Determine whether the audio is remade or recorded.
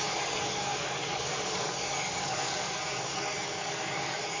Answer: remade